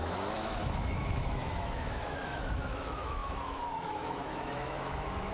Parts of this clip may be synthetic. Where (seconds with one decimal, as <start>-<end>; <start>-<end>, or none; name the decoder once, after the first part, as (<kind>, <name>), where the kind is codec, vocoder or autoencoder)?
0.0-5.3 (autoencoder, DAC-VAE)